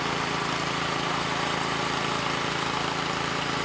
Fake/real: real